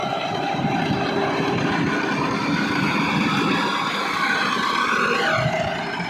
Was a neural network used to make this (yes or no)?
no